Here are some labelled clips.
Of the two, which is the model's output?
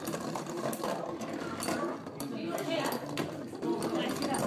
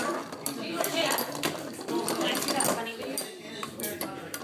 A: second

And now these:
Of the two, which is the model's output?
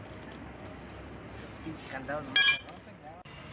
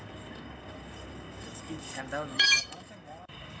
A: second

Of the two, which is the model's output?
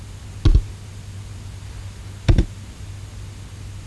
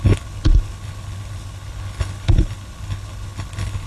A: second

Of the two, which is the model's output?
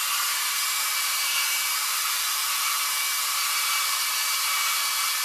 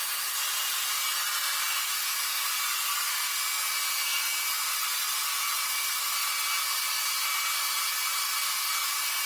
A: first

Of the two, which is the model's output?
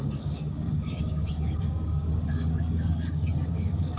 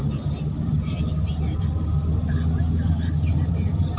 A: first